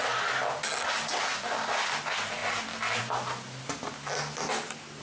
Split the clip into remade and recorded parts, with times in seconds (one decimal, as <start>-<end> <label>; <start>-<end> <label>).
0.0-5.0 recorded